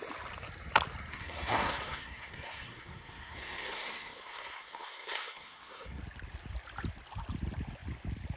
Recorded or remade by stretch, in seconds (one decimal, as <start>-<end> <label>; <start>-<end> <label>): 0.0-1.1 recorded; 1.1-6.0 remade; 6.0-8.4 recorded